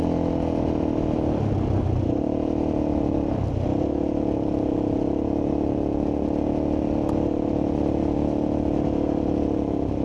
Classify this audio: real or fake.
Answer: real